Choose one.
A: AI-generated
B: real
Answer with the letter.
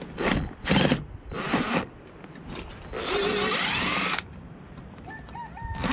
B